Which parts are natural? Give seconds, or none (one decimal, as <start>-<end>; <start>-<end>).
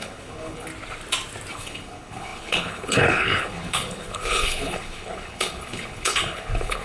0.7-1.5